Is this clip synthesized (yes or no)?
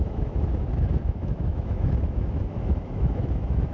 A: yes